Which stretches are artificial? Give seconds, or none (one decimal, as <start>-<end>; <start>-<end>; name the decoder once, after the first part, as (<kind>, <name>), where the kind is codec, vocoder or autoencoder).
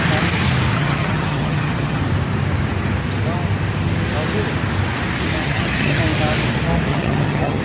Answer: 0.7-2.0 (vocoder, HiFi-GAN); 5.4-6.0; 6.9-7.6